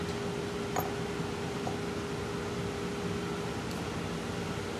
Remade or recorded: recorded